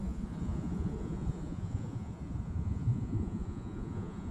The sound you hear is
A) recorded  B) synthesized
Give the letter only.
B